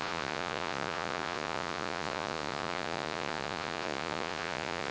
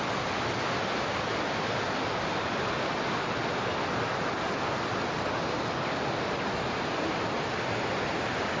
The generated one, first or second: first